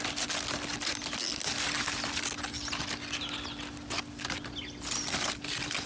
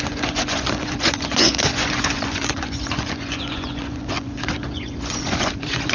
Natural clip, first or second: first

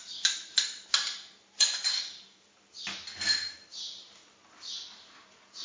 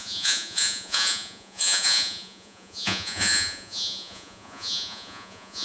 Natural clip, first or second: first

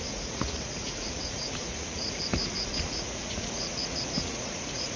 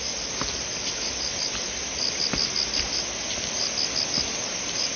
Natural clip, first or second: second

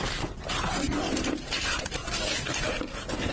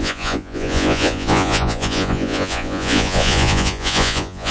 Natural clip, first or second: first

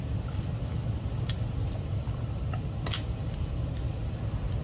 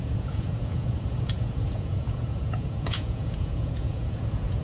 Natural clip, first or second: first